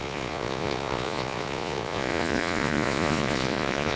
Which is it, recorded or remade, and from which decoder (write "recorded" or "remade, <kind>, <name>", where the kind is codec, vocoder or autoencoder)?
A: remade, vocoder, Vocos